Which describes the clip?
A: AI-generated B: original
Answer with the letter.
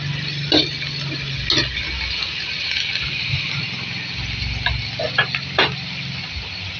B